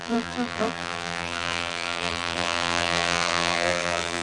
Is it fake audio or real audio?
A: fake